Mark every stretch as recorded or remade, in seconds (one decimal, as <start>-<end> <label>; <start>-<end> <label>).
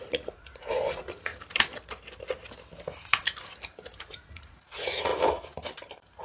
0.0-1.3 remade; 1.3-4.0 recorded; 4.0-5.1 remade; 5.1-6.2 recorded